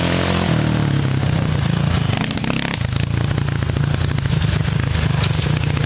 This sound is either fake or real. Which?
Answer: real